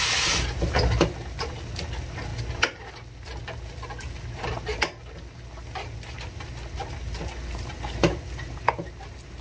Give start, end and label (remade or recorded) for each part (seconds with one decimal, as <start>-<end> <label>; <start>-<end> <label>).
0.0-9.4 recorded